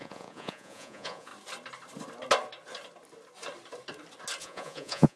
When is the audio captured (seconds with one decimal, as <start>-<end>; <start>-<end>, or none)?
1.3-4.4